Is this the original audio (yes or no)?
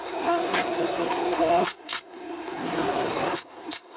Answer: no